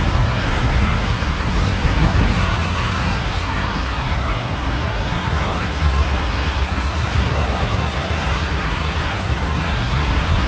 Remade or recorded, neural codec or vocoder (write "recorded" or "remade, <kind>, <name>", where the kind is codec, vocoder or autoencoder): remade, codec, SNAC